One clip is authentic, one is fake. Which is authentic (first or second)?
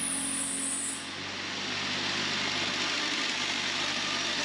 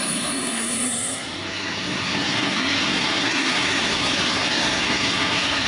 first